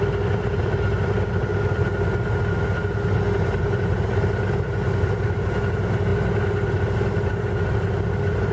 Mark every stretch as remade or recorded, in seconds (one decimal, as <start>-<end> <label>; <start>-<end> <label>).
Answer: 0.0-8.5 recorded